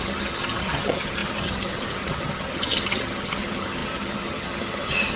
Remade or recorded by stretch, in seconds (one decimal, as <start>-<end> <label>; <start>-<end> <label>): 0.0-5.2 remade